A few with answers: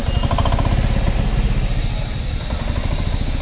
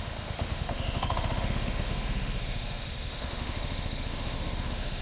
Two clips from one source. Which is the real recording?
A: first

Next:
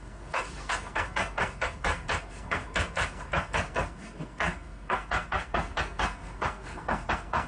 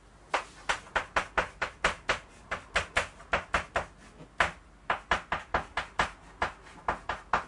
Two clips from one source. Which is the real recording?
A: second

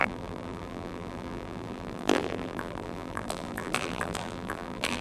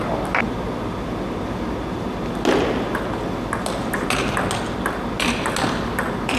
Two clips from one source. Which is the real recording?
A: second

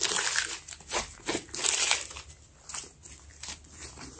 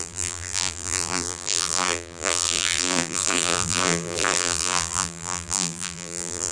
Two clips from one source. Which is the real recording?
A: first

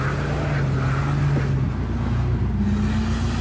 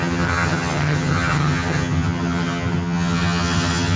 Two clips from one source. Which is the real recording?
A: first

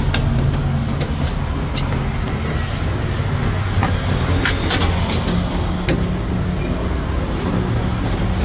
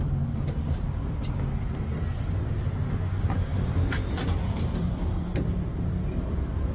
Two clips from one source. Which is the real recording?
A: first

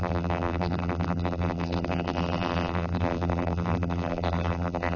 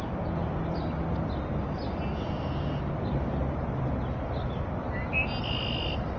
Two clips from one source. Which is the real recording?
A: second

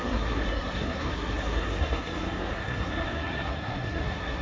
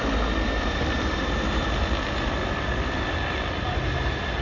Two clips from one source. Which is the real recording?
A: second